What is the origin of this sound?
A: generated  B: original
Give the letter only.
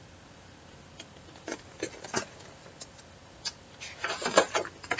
B